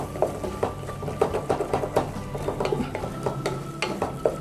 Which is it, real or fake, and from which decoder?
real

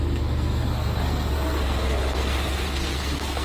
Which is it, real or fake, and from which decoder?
fake, codec, SNAC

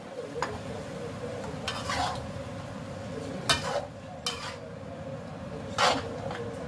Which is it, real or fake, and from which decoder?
real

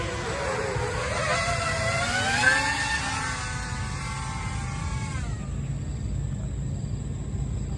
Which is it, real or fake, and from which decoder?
real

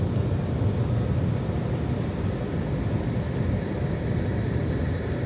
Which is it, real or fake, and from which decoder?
real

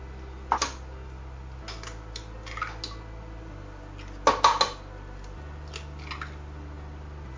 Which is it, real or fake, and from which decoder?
real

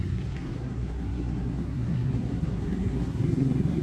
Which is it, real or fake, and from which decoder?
fake, codec, SNAC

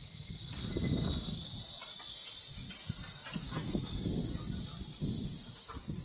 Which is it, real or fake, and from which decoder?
real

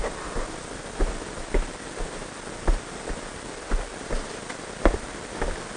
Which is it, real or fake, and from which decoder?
real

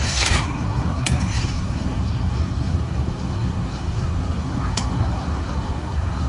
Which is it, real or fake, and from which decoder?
fake, codec, SNAC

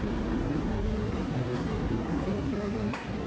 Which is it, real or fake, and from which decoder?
fake, codec, SNAC